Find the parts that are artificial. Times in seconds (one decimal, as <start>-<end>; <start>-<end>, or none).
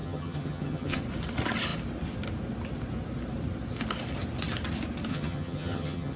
0.0-1.0; 5.1-6.2